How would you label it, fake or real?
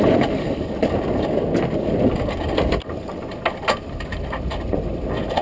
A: real